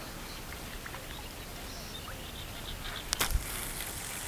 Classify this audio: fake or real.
real